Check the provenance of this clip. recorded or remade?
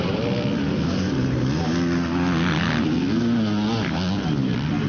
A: recorded